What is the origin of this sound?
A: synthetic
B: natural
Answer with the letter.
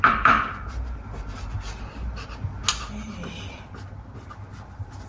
B